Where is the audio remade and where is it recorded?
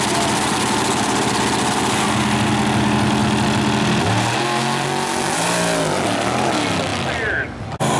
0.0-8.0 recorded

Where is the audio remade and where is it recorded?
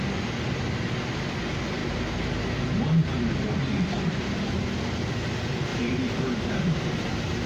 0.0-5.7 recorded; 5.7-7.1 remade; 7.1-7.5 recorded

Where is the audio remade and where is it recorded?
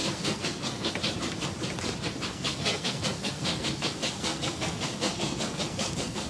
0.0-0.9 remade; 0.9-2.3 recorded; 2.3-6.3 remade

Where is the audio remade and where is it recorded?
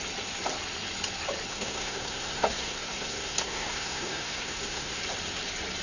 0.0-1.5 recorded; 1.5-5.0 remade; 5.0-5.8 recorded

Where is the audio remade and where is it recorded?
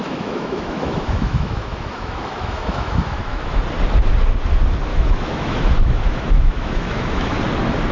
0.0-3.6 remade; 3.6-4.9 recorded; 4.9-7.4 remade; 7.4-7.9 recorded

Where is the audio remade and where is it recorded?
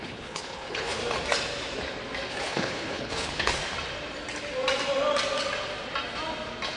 0.0-1.0 remade; 1.0-2.3 recorded; 2.3-3.6 remade; 3.6-6.8 recorded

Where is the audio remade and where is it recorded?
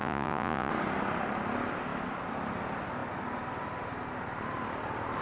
0.0-0.7 remade; 0.7-5.2 recorded